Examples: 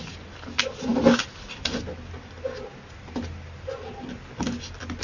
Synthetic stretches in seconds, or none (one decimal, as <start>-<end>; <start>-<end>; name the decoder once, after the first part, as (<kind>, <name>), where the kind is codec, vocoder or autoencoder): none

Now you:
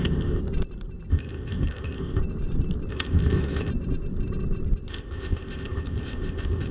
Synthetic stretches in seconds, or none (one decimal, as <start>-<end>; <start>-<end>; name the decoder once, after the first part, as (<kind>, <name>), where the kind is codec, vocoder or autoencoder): 0.0-0.4 (codec, ZipCodec); 1.1-2.2; 2.9-3.7; 4.9-6.7

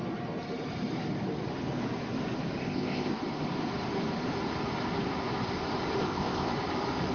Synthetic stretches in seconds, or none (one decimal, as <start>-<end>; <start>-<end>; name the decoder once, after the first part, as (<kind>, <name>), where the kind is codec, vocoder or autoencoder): 2.6-3.1 (codec, ZipCodec); 6.0-6.5